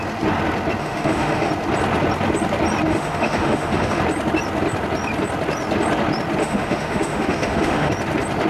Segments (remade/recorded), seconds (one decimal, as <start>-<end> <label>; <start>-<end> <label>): 0.0-0.8 recorded; 0.8-1.5 remade; 1.5-2.9 recorded; 2.9-4.0 remade; 4.0-6.4 recorded; 6.4-7.9 remade; 7.9-8.5 recorded